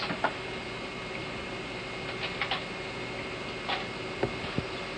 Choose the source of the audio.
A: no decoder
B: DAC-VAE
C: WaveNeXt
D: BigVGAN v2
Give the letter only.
A